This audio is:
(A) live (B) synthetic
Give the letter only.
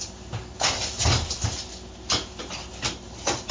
A